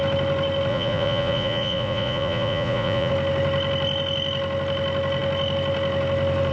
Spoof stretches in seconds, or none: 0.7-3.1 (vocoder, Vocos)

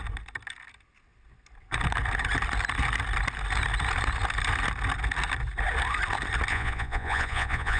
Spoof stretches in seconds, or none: 6.5-7.8 (vocoder, Vocos)

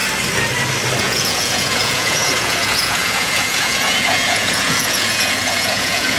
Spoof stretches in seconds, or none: 1.0-6.2 (vocoder, Vocos)

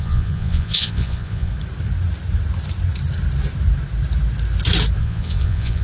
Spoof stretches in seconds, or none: 0.0-1.5 (vocoder, Vocos); 5.0-5.8

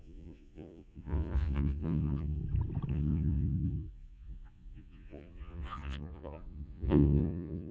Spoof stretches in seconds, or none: 0.0-2.4 (vocoder, Vocos); 2.9-7.7